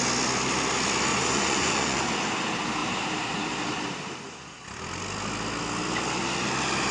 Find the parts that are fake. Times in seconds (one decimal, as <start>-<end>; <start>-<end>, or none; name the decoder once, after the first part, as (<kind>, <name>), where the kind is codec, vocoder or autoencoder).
1.1-2.0 (vocoder, Vocos)

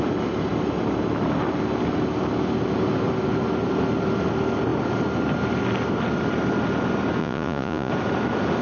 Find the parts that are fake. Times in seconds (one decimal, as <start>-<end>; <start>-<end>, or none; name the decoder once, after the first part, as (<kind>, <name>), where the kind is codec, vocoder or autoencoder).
7.2-7.9 (vocoder, Vocos)

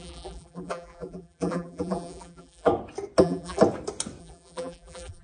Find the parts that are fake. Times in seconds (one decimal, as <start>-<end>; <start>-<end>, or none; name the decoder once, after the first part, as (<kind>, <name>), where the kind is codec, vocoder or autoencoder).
0.0-2.7 (vocoder, BigVGAN v2); 3.2-3.6; 4.2-5.2

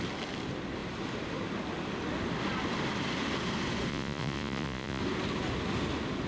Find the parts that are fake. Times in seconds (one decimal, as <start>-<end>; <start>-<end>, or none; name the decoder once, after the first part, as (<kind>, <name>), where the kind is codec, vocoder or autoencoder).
3.9-5.0 (vocoder, Vocos)

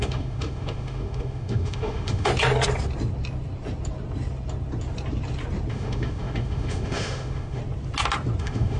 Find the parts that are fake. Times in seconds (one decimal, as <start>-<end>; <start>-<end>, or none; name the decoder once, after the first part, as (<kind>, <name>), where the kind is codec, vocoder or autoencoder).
0.0-2.3 (autoencoder, DAC-VAE); 5.7-7.6; 8.4-8.8

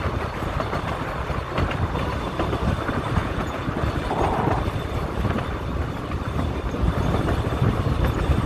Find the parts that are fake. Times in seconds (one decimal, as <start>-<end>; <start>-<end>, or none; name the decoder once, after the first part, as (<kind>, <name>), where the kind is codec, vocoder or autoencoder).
3.2-3.7 (vocoder, Vocos)

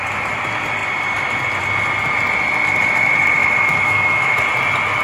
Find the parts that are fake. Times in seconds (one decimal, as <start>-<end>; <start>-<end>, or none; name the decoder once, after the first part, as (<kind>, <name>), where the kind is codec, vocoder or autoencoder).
3.4-4.4 (autoencoder, DAC-VAE)

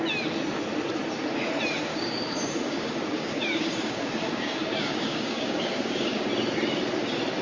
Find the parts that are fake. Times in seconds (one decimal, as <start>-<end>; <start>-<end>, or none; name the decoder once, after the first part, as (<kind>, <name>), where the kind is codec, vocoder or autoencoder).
1.9-6.3 (codec, DAC)